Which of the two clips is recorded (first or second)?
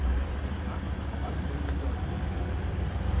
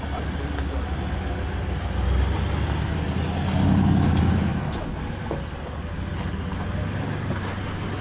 second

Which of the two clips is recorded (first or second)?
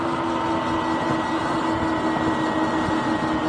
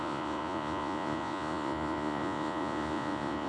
first